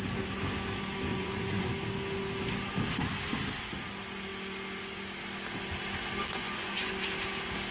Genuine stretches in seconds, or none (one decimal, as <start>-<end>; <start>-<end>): 0.0-1.1; 1.7-6.3; 6.9-7.7